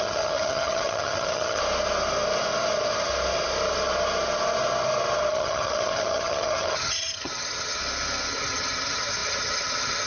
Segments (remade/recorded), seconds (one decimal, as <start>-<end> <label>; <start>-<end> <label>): 0.0-1.6 remade; 1.6-5.3 recorded; 5.3-7.8 remade; 7.8-8.3 recorded; 8.3-10.1 remade